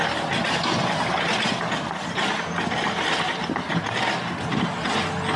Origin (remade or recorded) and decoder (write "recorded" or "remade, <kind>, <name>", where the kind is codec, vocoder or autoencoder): recorded